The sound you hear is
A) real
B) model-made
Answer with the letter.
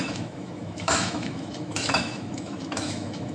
B